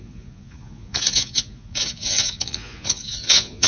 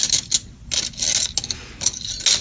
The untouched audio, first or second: second